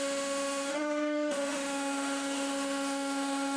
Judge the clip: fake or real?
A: fake